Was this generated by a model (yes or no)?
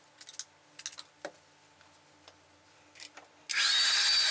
no